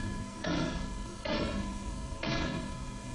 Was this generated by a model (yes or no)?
yes